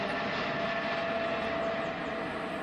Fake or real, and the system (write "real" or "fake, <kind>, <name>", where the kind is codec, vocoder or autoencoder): real